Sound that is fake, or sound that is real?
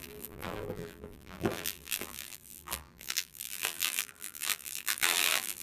fake